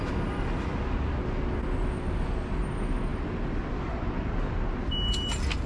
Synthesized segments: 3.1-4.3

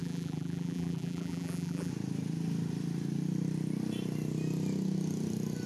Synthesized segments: 0.0-1.9

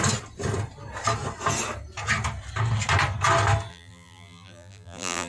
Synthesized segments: 3.7-5.3

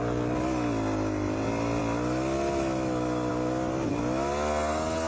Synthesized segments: none